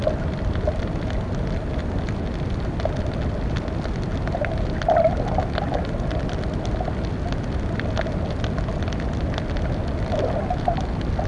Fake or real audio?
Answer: real